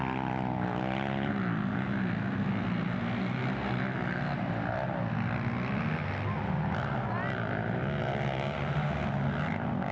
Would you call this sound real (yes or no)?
yes